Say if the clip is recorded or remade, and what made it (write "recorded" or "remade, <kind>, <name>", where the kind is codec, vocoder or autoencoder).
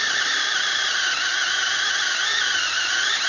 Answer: remade, vocoder, BigVGAN v2